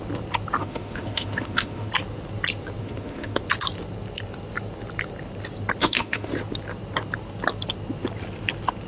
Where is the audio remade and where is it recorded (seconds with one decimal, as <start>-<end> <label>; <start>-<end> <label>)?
0.0-0.6 recorded; 0.6-1.9 remade; 1.9-2.8 recorded; 2.8-3.4 remade; 3.4-5.8 recorded; 5.8-6.3 remade; 6.3-8.9 recorded